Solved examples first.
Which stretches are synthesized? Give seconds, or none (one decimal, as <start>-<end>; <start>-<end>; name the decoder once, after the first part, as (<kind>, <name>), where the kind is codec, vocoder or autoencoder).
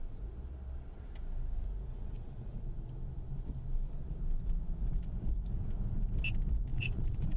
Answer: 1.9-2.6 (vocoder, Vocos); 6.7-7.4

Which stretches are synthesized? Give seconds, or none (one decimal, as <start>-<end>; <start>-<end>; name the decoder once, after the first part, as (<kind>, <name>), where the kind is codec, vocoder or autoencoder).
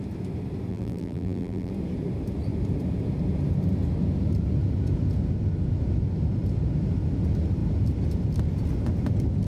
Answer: 0.7-1.7 (vocoder, BigVGAN v2)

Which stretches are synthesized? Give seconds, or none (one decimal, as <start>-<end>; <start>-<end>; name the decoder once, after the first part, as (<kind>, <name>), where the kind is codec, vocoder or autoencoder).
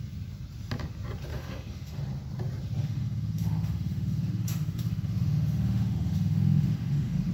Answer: 1.3-2.0 (autoencoder, DAC-VAE); 2.8-7.3